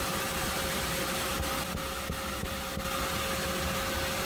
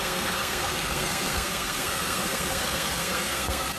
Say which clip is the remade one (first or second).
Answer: second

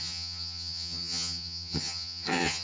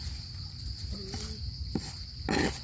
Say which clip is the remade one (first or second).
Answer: first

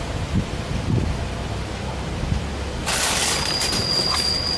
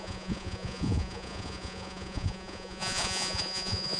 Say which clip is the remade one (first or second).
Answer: second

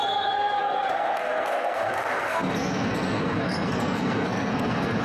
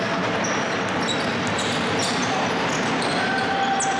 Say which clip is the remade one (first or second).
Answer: first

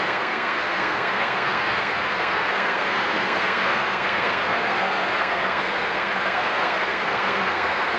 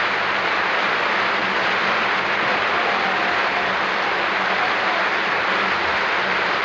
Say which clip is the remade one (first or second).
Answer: first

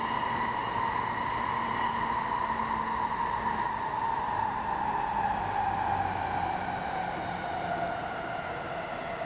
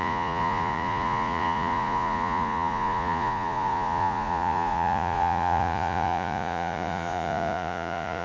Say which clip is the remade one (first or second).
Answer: second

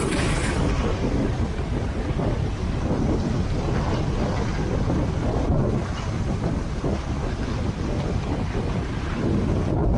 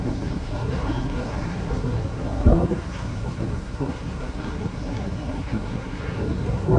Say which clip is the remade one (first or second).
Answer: second